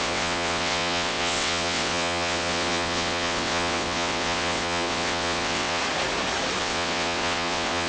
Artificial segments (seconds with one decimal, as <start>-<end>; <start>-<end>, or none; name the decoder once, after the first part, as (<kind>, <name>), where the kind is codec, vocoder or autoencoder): 0.0-5.8 (vocoder, WaveNeXt); 6.6-7.9